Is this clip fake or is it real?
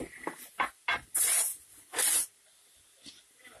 real